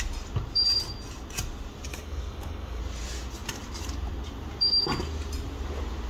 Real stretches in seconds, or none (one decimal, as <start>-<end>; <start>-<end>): 0.0-1.9; 2.8-6.1